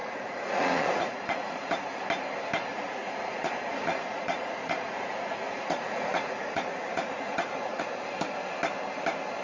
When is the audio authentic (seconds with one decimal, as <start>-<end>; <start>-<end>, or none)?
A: 1.9-2.7; 7.8-9.4